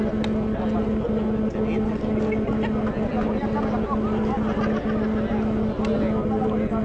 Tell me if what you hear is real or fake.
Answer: real